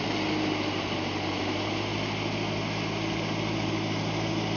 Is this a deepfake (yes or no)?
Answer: no